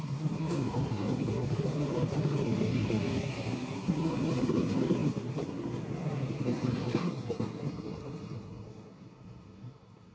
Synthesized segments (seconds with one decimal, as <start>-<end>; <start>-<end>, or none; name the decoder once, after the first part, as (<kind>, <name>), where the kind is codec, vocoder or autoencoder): 0.0-10.1 (codec, SNAC)